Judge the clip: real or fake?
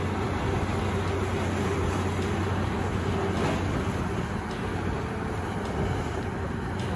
real